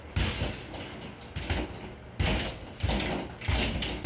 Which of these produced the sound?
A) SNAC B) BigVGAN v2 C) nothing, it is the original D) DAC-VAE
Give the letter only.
C